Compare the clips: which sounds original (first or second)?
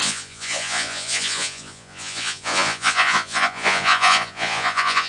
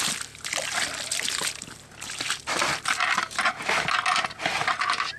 second